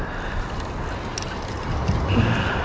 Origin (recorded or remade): recorded